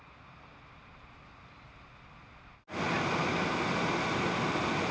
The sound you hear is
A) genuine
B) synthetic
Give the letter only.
A